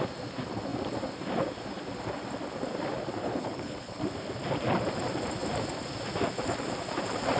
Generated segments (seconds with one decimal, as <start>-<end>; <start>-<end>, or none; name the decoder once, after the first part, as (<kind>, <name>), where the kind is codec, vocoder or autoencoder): 3.2-4.0 (codec, HILCodec)